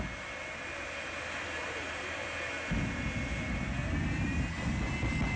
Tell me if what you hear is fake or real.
real